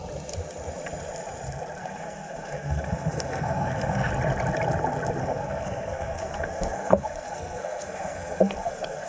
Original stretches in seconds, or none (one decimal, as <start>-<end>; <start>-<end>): 0.0-1.8; 4.1-5.2